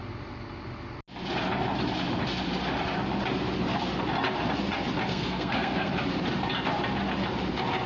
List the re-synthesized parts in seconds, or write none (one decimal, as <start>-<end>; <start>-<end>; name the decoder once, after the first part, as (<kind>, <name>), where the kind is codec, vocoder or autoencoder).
5.1-5.9 (codec, SNAC)